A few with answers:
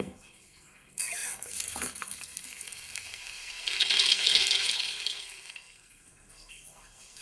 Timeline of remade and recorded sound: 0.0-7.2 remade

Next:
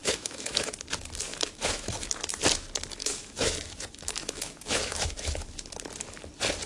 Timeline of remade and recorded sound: 0.0-0.7 remade; 0.7-1.3 recorded; 1.3-2.1 remade; 2.1-3.0 recorded; 3.0-5.7 remade; 5.7-6.7 recorded

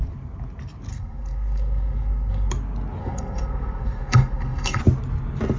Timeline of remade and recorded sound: 0.0-0.9 recorded; 0.9-2.5 remade; 2.5-3.0 recorded; 3.0-4.8 remade; 4.8-5.6 recorded